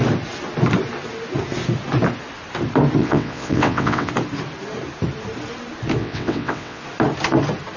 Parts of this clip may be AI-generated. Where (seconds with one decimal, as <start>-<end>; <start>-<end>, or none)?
3.0-4.1; 6.0-6.8